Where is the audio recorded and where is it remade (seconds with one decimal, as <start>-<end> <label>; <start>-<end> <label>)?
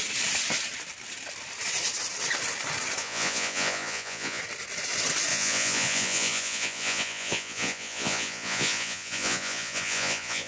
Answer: 0.0-3.0 recorded; 3.0-4.4 remade; 4.4-5.3 recorded; 5.3-10.5 remade